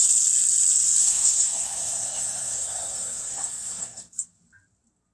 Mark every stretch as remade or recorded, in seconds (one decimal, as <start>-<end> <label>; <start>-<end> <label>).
0.0-1.0 recorded; 1.0-4.0 remade; 4.0-5.1 recorded